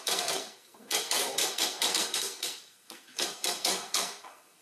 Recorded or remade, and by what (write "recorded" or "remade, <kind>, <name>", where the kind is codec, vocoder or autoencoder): remade, codec, SNAC